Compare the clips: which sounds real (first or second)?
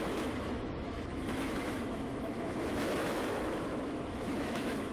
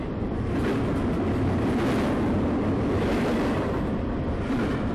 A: second